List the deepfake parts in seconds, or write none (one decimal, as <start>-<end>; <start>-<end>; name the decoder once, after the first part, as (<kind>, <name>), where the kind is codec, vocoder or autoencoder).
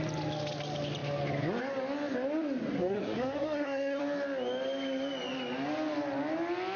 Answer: 2.7-4.0 (codec, SNAC)